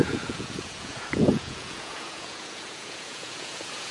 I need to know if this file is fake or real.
fake